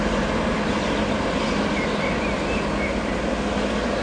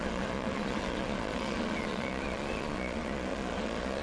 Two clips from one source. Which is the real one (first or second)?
first